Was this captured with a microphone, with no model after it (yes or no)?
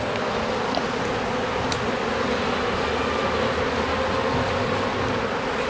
yes